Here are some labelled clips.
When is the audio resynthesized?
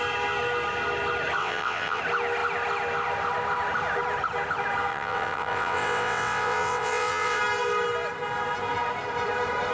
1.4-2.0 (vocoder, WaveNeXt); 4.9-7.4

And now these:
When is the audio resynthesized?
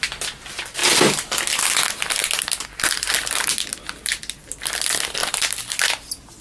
none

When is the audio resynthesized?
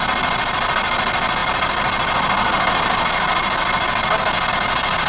none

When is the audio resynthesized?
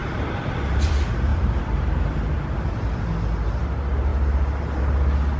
0.0-0.9 (vocoder, BigVGAN v2); 1.3-3.0